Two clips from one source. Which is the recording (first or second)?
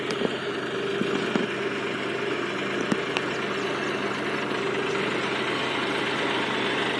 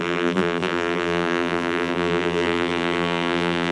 first